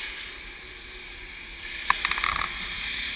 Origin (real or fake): real